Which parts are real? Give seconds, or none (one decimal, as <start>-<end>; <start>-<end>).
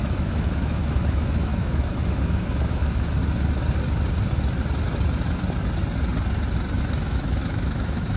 3.2-6.8